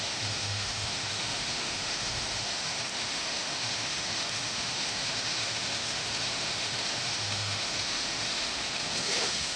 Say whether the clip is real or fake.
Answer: fake